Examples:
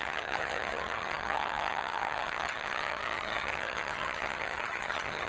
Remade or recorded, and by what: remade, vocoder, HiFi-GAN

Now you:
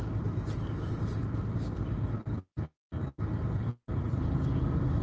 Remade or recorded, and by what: recorded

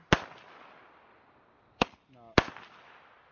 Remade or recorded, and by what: recorded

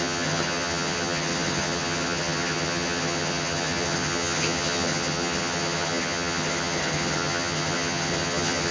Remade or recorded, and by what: remade, vocoder, HiFi-GAN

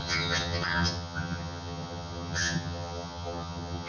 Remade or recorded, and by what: remade, vocoder, HiFi-GAN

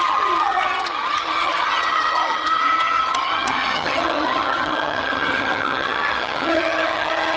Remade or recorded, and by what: remade, vocoder, HiFi-GAN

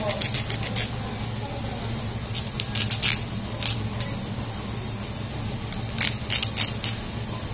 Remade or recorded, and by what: recorded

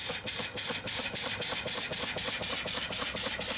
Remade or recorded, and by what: recorded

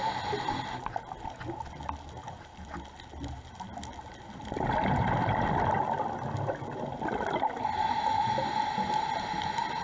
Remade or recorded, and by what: recorded